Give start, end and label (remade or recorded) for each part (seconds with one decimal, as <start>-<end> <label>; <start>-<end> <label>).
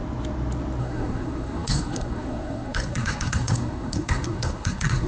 0.0-0.8 recorded; 0.8-5.1 remade